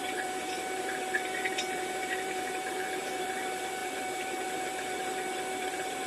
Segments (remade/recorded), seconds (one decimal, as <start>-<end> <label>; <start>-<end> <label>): 0.0-6.1 remade